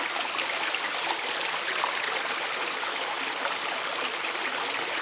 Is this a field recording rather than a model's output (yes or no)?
yes